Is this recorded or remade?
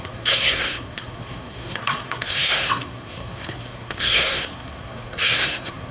remade